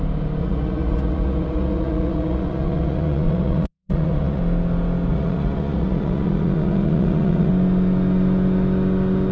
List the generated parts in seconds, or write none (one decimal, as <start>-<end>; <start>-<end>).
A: 0.4-4.4; 5.1-7.5